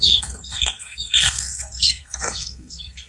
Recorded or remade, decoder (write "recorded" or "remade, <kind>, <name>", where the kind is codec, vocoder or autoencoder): remade, codec, SNAC